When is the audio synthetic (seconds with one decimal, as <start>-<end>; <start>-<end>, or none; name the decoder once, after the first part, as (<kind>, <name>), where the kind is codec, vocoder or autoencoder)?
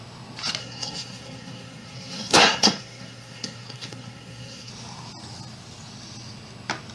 0.6-4.7 (codec, SNAC)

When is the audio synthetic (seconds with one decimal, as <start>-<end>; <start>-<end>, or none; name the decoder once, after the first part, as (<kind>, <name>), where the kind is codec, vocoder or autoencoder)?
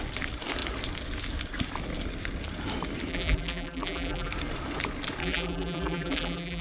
3.1-4.3 (vocoder, BigVGAN v2); 5.2-6.6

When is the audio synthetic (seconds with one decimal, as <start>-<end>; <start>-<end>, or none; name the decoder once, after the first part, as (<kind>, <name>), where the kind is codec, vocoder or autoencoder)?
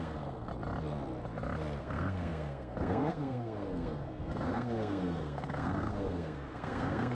0.0-0.5 (codec, SNAC); 1.8-7.1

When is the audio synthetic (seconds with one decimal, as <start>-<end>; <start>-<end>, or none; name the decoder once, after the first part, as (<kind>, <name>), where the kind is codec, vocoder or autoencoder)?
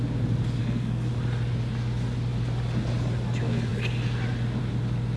0.6-1.1 (codec, SNAC)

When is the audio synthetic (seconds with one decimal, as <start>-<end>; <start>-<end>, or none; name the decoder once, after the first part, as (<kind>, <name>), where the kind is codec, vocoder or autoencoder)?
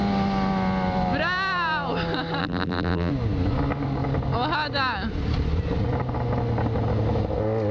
2.4-3.1 (vocoder, BigVGAN v2)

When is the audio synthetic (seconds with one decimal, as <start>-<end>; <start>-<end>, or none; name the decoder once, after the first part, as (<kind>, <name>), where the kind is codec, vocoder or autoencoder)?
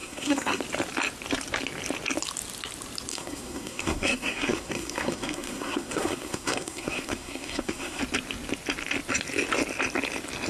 0.0-0.6 (codec, SNAC); 3.1-8.0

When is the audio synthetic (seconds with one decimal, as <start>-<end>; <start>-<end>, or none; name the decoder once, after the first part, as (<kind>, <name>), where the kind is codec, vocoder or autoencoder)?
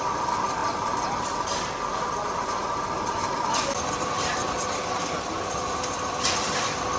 0.0-0.6 (vocoder, BigVGAN v2); 3.6-7.0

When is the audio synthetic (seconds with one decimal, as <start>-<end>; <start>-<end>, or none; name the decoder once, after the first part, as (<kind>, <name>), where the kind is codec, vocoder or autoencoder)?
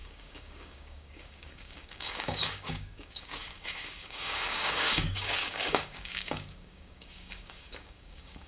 0.0-8.5 (codec, DAC)